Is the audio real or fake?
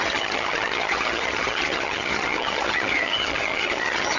fake